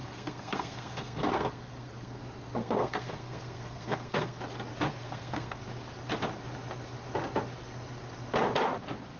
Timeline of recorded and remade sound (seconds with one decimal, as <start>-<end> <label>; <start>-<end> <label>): 0.0-2.2 remade; 2.2-2.6 recorded; 2.6-4.4 remade; 4.4-5.0 recorded; 5.0-5.6 remade; 5.6-9.2 recorded